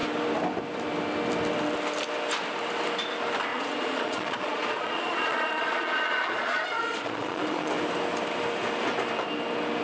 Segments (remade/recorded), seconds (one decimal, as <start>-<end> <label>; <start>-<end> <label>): 0.0-3.5 recorded; 3.5-7.7 remade; 7.7-9.8 recorded